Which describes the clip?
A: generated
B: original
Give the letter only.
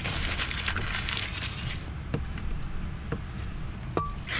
B